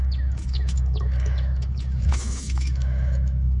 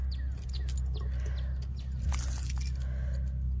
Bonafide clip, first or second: second